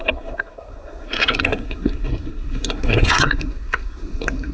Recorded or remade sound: remade